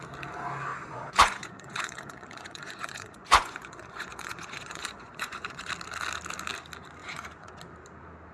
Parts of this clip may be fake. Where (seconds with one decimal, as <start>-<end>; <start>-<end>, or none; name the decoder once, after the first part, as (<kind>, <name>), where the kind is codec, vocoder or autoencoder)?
0.7-5.7 (vocoder, Vocos); 7.0-7.6